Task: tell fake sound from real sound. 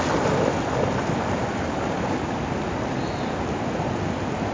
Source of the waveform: real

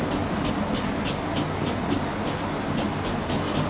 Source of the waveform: real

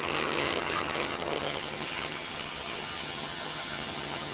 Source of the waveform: fake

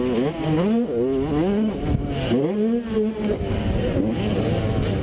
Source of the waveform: real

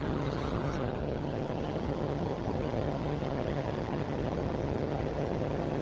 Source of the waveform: fake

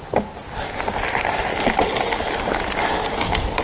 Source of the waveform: real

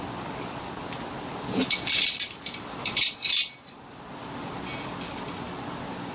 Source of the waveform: real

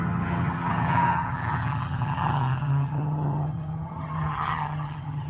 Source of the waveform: fake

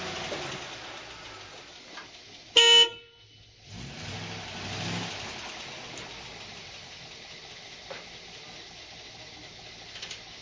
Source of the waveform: real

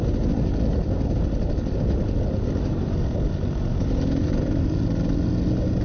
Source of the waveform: real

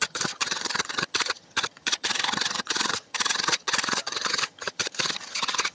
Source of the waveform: fake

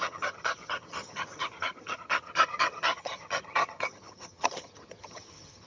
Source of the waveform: fake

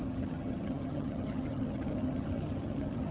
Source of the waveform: fake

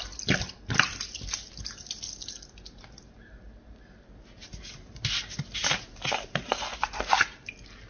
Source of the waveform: real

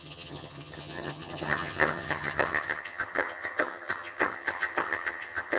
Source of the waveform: fake